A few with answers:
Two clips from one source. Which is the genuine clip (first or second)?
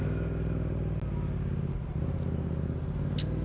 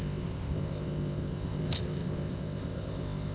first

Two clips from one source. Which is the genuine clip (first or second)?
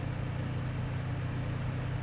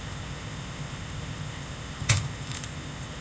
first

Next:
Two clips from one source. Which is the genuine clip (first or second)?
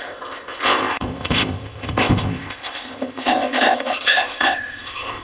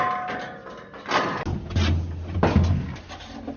second